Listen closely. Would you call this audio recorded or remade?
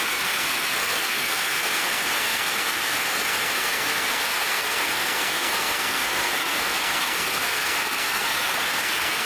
remade